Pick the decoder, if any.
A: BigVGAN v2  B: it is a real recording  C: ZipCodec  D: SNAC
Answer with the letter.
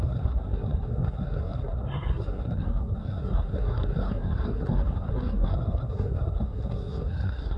D